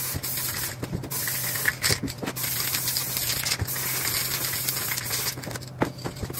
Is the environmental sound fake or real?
real